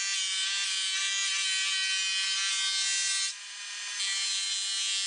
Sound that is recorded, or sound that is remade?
recorded